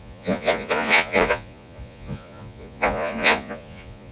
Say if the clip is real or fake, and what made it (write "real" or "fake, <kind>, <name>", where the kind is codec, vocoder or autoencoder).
fake, vocoder, Vocos